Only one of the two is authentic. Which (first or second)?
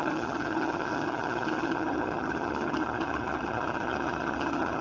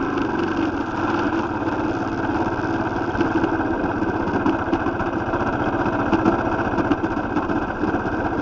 second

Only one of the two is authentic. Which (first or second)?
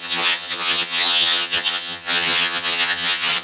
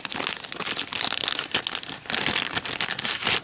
second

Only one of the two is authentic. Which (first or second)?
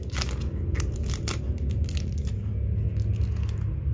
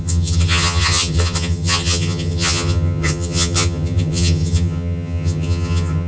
first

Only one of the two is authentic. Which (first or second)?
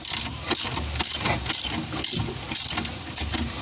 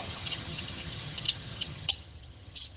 first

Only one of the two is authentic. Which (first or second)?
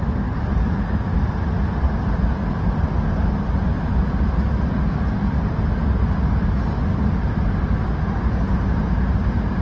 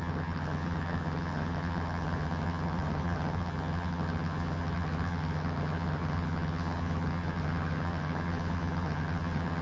first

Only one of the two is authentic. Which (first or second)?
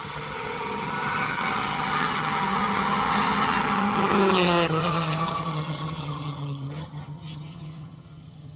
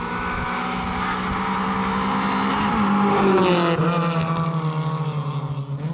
second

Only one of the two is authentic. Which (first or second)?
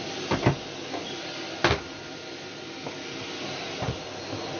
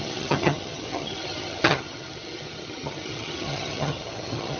first